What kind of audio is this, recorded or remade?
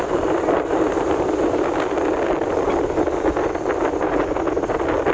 recorded